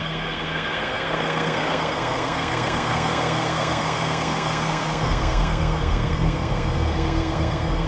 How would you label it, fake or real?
fake